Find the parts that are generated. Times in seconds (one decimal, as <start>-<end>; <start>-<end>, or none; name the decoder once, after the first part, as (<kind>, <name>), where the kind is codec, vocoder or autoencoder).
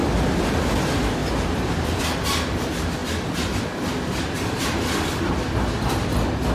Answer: 1.2-2.0 (vocoder, BigVGAN v2); 3.0-4.6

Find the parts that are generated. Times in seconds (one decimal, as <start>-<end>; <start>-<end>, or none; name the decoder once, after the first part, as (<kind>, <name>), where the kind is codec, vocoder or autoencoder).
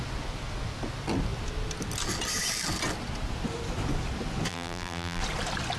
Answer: 4.5-5.2 (vocoder, BigVGAN v2)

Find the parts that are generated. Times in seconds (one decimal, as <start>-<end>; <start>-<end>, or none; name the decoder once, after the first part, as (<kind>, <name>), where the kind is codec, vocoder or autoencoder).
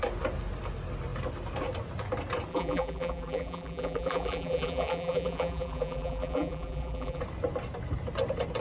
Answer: 2.5-7.2 (vocoder, BigVGAN v2)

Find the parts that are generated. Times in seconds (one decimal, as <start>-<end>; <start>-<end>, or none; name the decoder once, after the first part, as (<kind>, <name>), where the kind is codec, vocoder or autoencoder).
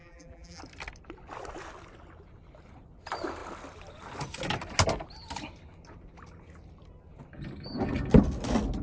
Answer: 0.0-0.6 (vocoder, BigVGAN v2)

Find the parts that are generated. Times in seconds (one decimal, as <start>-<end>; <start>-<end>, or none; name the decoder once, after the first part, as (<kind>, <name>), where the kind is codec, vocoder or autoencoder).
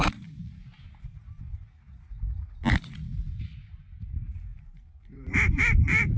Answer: 0.0-1.2 (vocoder, BigVGAN v2); 3.1-6.2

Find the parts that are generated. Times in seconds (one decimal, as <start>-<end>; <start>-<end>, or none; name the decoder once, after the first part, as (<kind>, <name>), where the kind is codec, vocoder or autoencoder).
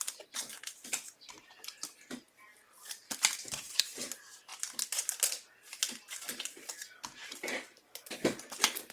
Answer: 2.5-3.8 (vocoder, BigVGAN v2); 7.2-8.9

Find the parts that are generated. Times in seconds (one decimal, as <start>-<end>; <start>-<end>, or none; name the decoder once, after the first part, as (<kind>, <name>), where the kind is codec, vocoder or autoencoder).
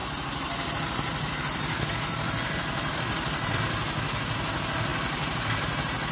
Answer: 0.0-3.6 (vocoder, BigVGAN v2)